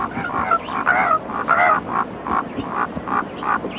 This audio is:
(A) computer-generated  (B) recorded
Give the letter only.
B